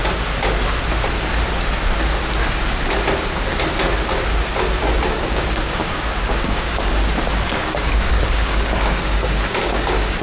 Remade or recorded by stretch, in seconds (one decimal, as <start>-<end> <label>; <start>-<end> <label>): 0.0-5.2 recorded; 5.2-10.2 remade